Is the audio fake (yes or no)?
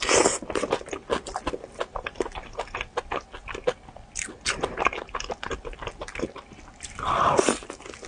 no